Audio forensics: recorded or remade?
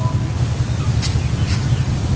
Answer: recorded